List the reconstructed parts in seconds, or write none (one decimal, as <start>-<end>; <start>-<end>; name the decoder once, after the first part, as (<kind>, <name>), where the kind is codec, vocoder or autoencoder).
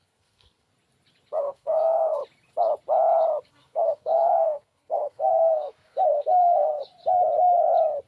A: 0.0-0.7 (codec, SNAC); 1.4-2.2; 3.5-6.8